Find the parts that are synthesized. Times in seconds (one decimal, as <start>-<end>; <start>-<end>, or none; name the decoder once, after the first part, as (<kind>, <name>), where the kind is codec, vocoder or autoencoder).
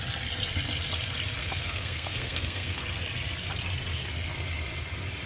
1.4-2.8 (codec, SNAC)